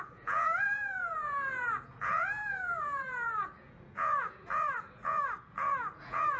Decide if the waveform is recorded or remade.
remade